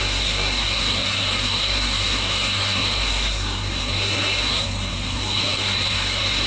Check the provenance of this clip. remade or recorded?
remade